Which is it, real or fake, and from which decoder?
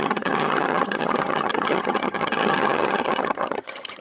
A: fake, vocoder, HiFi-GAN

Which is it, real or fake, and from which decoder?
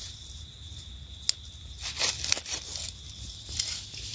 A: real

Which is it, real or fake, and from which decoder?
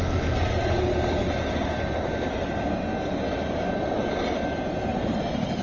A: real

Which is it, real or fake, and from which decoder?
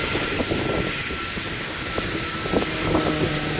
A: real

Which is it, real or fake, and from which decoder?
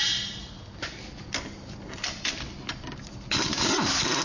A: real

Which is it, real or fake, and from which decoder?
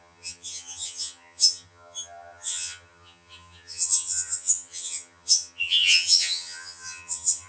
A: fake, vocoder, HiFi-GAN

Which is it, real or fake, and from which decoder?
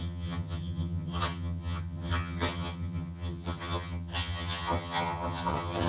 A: fake, vocoder, HiFi-GAN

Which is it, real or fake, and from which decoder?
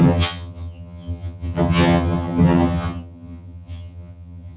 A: fake, vocoder, HiFi-GAN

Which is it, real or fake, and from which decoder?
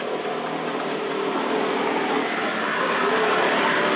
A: real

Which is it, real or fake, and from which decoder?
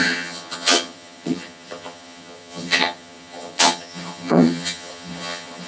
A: fake, vocoder, HiFi-GAN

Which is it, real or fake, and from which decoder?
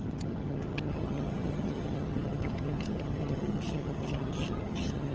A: fake, vocoder, HiFi-GAN